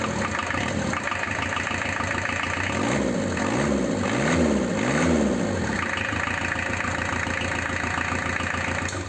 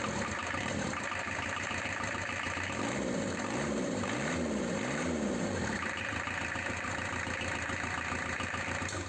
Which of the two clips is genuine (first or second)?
first